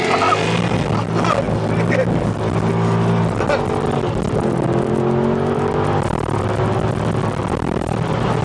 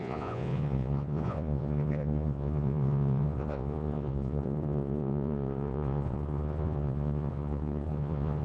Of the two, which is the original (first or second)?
first